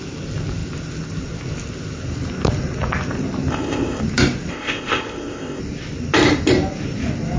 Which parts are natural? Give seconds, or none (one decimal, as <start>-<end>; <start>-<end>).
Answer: 0.0-3.5; 4.0-4.5; 5.6-7.4